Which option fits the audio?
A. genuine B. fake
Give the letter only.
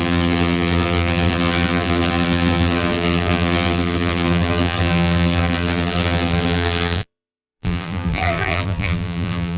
B